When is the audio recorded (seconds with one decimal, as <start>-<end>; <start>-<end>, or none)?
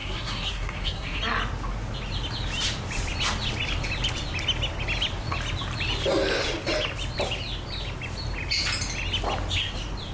1.2-10.1